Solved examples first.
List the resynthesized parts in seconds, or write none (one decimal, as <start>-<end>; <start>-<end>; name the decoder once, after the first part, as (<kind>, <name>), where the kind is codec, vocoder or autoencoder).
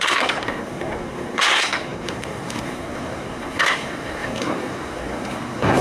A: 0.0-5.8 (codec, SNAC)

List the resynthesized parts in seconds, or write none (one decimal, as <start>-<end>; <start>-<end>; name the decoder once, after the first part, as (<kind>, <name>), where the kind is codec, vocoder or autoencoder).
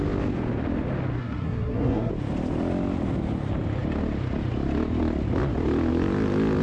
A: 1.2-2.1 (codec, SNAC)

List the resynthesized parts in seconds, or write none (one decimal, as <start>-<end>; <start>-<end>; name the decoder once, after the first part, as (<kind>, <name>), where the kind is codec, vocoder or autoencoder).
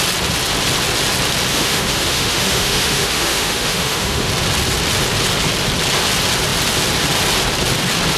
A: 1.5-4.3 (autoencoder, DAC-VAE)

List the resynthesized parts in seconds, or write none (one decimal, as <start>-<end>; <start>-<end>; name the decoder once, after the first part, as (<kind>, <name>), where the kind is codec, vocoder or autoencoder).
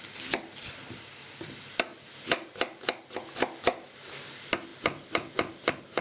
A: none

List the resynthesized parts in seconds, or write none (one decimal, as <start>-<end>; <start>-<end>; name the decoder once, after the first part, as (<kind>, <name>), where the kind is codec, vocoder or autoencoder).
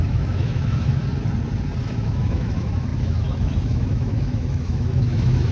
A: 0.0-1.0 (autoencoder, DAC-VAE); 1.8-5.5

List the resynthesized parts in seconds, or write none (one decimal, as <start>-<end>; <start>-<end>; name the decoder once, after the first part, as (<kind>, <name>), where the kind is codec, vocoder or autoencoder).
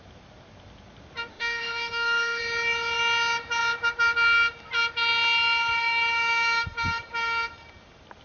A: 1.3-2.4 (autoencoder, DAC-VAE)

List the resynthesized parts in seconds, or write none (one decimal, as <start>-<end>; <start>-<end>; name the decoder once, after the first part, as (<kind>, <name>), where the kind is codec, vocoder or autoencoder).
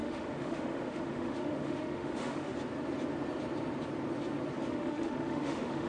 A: 0.0-2.5 (autoencoder, DAC-VAE); 4.7-5.9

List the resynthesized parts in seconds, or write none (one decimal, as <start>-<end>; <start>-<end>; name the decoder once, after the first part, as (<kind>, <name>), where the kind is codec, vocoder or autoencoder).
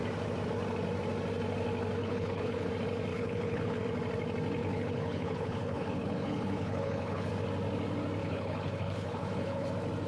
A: 2.0-2.7 (codec, HILCodec); 3.1-3.8; 4.6-7.3; 8.2-9.7